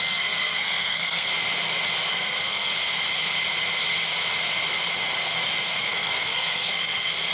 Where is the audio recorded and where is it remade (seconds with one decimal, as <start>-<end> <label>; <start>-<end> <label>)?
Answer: 0.0-1.3 remade; 1.3-2.1 recorded; 2.1-2.7 remade; 2.7-5.8 recorded; 5.8-7.3 remade